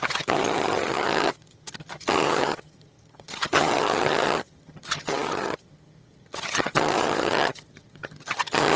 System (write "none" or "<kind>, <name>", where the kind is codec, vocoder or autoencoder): vocoder, HiFi-GAN